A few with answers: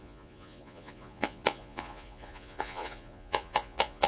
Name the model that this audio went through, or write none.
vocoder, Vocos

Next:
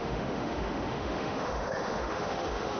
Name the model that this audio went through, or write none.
autoencoder, DAC-VAE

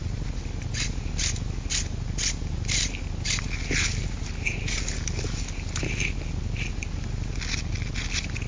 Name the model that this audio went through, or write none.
none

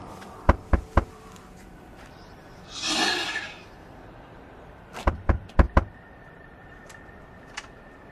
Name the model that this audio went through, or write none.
vocoder, BigVGAN v2